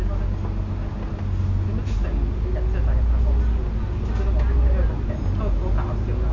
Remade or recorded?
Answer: recorded